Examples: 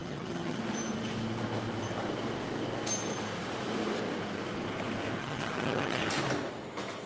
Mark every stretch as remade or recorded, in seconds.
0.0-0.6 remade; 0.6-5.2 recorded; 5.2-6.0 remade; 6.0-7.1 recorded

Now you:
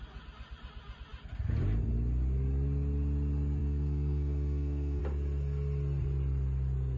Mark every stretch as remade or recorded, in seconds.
0.0-3.6 recorded; 3.6-5.0 remade; 5.0-7.0 recorded

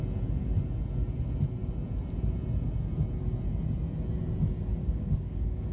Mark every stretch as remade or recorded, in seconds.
0.0-4.8 recorded; 4.8-5.7 remade

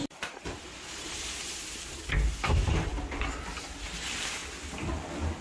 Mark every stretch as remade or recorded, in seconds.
0.0-2.0 remade; 2.0-5.4 recorded

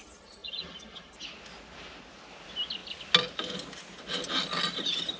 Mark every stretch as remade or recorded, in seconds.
0.0-5.2 recorded

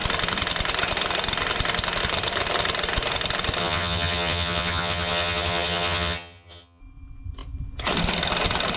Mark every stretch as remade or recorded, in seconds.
0.0-3.6 recorded; 3.6-6.8 remade; 6.8-8.8 recorded